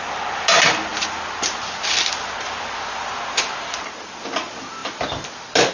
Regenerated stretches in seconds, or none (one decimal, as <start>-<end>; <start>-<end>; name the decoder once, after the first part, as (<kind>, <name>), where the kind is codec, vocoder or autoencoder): none